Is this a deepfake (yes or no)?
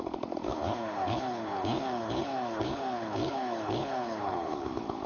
yes